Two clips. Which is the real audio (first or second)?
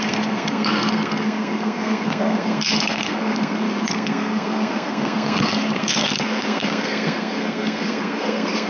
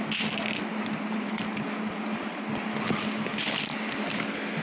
second